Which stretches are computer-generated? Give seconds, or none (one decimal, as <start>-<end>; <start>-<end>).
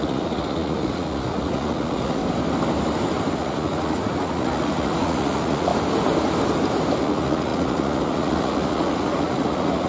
0.0-2.2; 3.3-5.7; 7.0-9.9